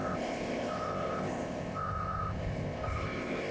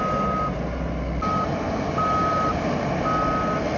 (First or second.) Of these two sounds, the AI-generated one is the first